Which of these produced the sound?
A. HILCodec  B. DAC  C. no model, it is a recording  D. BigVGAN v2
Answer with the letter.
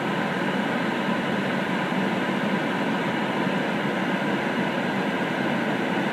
C